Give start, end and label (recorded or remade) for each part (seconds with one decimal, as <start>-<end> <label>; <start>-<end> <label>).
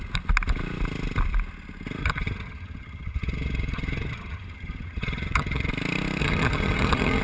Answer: 0.0-2.0 recorded; 2.0-5.7 remade; 5.7-6.2 recorded; 6.2-7.2 remade